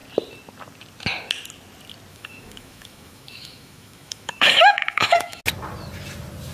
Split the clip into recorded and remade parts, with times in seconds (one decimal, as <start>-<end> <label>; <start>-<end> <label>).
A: 0.0-2.1 recorded; 2.1-5.4 remade; 5.4-6.5 recorded